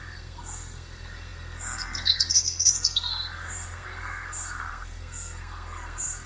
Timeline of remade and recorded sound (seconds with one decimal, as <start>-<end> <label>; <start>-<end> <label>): 0.0-6.3 remade